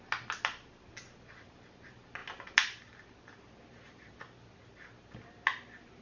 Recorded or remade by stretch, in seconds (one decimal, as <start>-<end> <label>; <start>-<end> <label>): 0.0-6.0 recorded